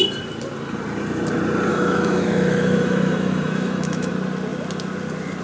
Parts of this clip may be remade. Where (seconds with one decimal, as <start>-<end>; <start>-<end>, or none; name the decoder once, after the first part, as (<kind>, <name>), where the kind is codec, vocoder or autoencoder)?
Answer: 1.7-4.1 (autoencoder, DAC-VAE)